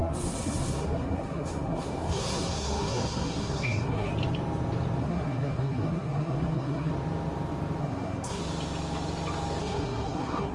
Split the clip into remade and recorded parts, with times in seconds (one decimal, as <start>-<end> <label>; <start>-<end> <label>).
0.0-4.1 remade; 4.1-5.0 recorded; 5.0-6.9 remade; 6.9-7.8 recorded; 7.8-8.4 remade; 8.4-9.6 recorded; 9.6-10.5 remade